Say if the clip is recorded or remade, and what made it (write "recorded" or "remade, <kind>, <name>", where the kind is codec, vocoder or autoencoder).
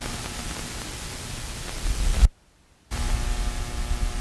recorded